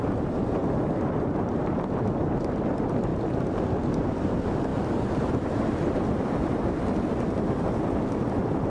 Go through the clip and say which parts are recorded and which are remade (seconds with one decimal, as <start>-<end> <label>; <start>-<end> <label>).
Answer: 0.0-8.7 recorded